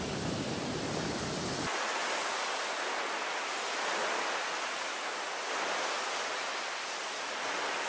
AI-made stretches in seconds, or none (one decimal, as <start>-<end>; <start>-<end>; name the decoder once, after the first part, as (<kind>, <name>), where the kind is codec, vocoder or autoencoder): none